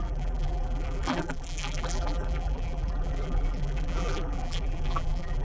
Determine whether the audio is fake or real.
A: fake